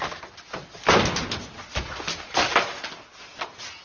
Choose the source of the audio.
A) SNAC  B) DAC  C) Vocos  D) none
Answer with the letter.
D